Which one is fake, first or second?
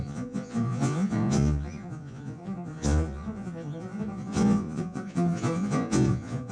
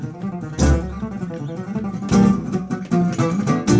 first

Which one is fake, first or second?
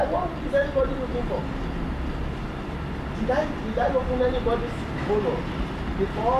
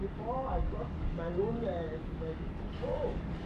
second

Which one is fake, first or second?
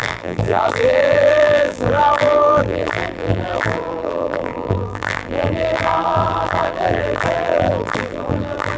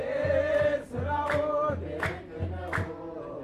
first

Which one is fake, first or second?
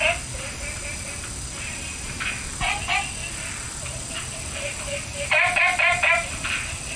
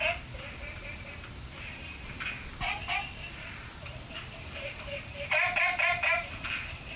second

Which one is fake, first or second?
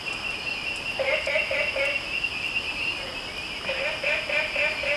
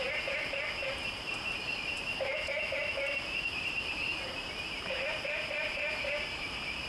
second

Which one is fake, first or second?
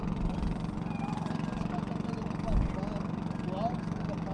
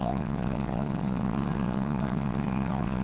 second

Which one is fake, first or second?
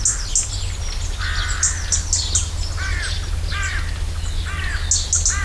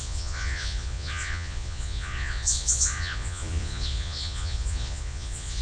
second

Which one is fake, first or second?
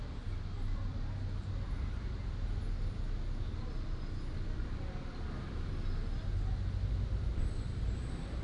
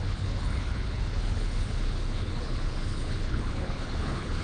second